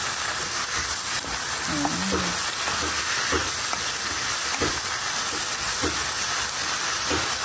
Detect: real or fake real